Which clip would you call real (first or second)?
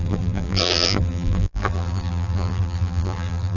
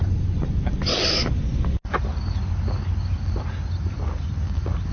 second